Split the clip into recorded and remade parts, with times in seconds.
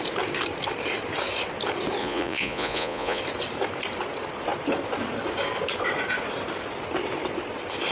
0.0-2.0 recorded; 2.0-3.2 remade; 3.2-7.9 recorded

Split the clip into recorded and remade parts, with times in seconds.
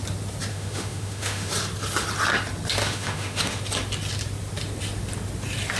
0.0-0.5 recorded; 0.5-1.5 remade; 1.5-2.8 recorded; 2.8-3.6 remade; 3.6-5.8 recorded